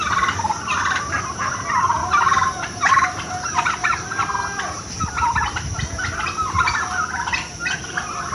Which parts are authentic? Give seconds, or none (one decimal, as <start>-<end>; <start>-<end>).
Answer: 0.0-2.0; 2.9-8.3